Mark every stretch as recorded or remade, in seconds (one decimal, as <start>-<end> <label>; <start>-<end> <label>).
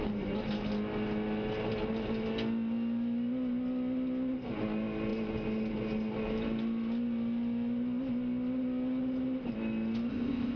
0.0-10.1 recorded; 10.1-10.6 remade